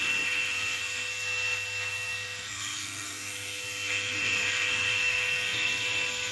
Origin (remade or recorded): remade